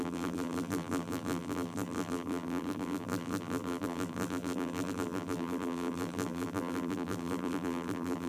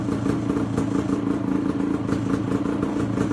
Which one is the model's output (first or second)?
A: first